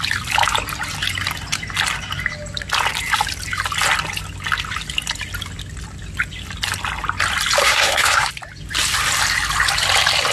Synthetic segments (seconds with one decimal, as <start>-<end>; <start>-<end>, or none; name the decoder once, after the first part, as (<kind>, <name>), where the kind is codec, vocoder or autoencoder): 7.6-8.3 (codec, SNAC)